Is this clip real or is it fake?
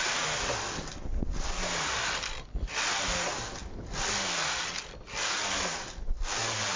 real